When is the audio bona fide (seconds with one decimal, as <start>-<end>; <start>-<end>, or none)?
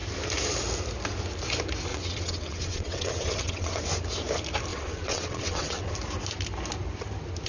0.0-1.9; 3.8-4.7; 5.9-7.5